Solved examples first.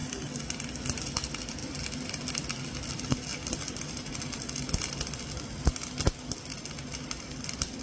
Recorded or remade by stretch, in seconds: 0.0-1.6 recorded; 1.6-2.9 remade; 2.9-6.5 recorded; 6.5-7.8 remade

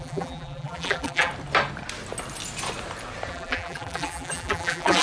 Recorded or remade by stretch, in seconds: 0.0-1.3 remade; 1.3-3.3 recorded; 3.3-5.0 remade

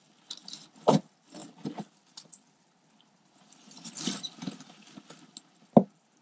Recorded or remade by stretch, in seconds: 0.0-1.4 recorded; 1.4-5.0 remade; 5.0-6.2 recorded

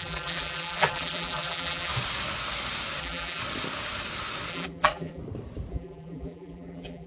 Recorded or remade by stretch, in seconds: 0.0-1.9 remade; 1.9-3.0 recorded; 3.0-3.4 remade; 3.4-4.5 recorded; 4.5-5.2 remade; 5.2-5.7 recorded; 5.7-7.1 remade

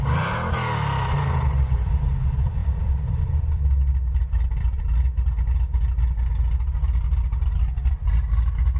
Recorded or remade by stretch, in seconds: 0.0-2.6 recorded; 2.6-4.8 remade; 4.8-8.8 recorded

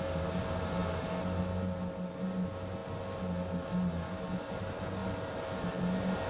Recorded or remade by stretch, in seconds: 0.0-6.3 recorded

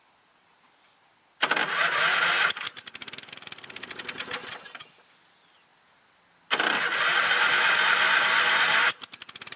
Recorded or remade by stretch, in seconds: 0.0-1.6 recorded; 1.6-2.4 remade; 2.4-9.6 recorded

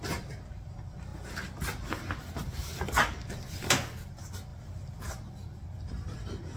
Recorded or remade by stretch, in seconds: 0.0-6.6 recorded